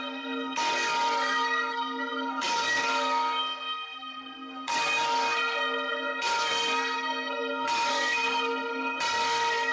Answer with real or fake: fake